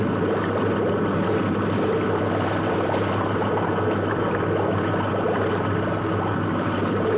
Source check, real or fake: real